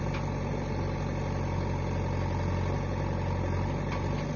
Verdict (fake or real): real